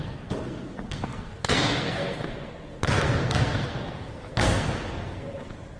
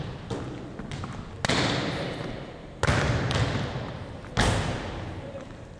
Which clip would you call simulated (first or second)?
first